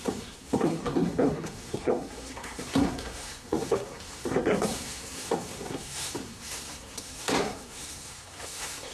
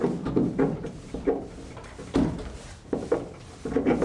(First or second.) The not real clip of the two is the first